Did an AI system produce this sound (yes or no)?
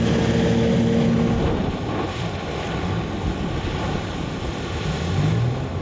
no